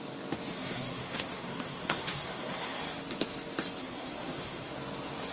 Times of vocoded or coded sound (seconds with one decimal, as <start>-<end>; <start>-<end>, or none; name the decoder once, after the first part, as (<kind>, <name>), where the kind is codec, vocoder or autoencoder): 0.5-2.8 (codec, SNAC); 3.8-4.7